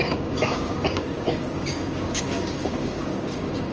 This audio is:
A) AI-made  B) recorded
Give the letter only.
A